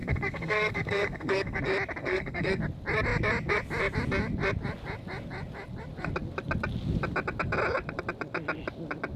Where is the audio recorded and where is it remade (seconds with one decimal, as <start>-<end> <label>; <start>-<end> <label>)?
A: 0.0-1.6 remade; 1.6-2.0 recorded; 2.0-2.6 remade; 2.6-9.2 recorded